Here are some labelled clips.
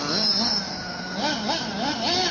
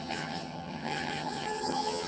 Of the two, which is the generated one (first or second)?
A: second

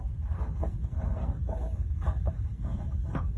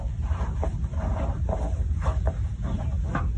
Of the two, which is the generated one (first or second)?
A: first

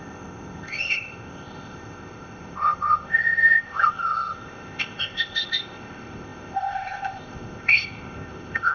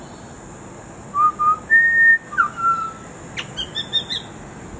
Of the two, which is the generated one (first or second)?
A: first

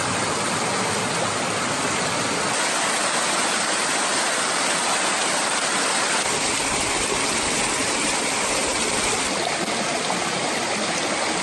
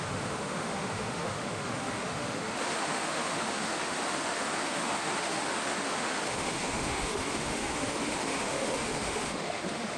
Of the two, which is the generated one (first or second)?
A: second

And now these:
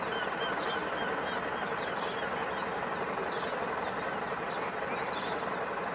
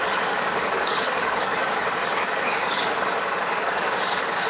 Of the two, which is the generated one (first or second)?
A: second